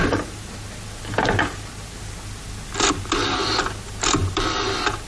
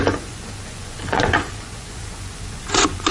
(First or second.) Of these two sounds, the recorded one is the first